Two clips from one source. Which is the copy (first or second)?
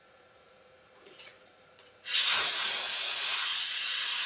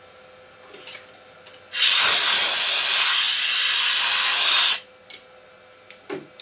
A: first